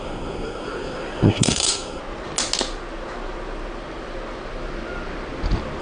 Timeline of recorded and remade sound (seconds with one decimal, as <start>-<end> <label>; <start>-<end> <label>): 0.0-2.0 remade; 2.0-5.8 recorded

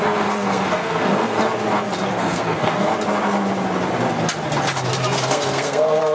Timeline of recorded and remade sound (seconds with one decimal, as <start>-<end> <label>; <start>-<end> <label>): 0.0-1.4 remade; 1.4-2.1 recorded; 2.1-2.9 remade; 2.9-5.1 recorded; 5.1-6.1 remade

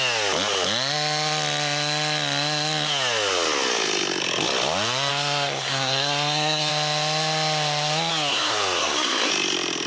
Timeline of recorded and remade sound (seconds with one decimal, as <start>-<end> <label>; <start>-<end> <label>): 0.0-5.1 recorded; 5.1-6.7 remade; 6.7-8.3 recorded; 8.3-9.3 remade; 9.3-9.9 recorded

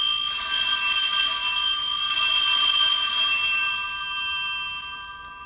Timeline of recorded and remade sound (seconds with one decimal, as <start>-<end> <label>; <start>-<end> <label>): 0.0-5.5 recorded